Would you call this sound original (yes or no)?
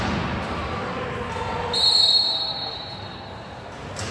yes